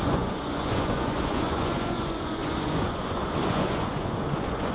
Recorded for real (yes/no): no